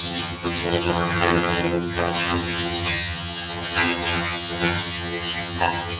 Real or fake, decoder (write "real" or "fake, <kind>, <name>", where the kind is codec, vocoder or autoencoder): fake, vocoder, HiFi-GAN